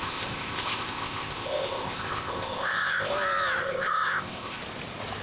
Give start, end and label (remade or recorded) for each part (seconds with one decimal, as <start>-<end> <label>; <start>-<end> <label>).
0.0-3.1 remade; 3.1-3.6 recorded; 3.6-4.6 remade; 4.6-5.2 recorded